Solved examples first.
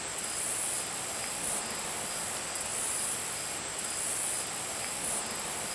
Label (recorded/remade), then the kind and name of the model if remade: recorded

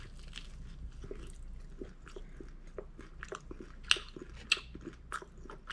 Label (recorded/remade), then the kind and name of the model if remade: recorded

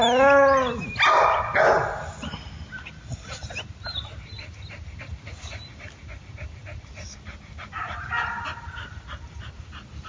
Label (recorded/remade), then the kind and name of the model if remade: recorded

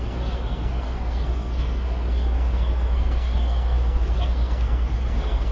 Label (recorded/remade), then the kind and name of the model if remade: remade, codec, SNAC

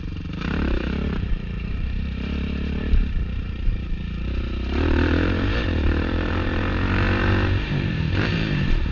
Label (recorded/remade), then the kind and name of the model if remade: remade, vocoder, BigVGAN v2